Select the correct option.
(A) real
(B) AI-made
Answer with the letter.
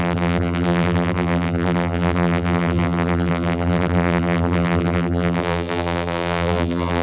B